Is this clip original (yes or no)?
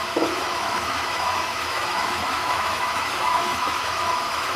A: no